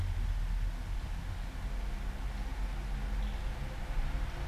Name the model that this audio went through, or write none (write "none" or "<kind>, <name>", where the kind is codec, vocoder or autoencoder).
none